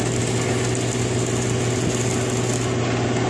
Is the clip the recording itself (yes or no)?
yes